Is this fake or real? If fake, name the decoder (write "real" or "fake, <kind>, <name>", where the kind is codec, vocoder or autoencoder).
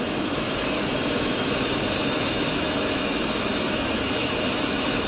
fake, autoencoder, DAC-VAE